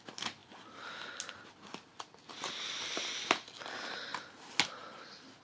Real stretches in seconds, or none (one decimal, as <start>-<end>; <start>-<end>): 0.0-5.4